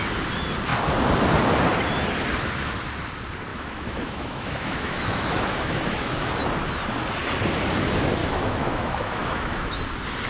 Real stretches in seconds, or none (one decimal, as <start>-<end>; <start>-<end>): 0.0-3.5; 6.3-8.2; 9.8-10.3

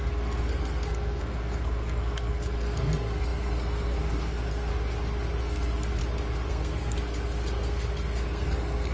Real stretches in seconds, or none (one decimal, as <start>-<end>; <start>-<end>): 4.7-5.4; 6.0-6.5

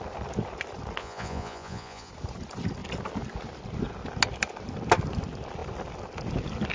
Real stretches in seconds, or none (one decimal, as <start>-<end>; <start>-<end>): 0.0-1.0; 2.1-6.7

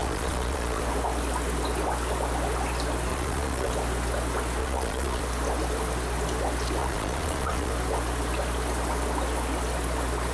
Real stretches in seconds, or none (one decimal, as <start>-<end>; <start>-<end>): 0.8-3.1; 3.7-4.6; 5.2-6.8; 7.7-10.3